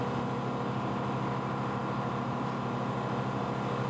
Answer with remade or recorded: recorded